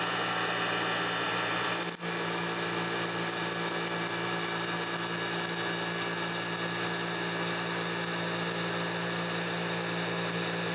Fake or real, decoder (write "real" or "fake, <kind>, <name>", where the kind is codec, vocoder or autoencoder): real